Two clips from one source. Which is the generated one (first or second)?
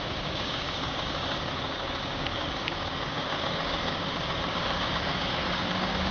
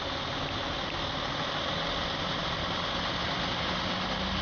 first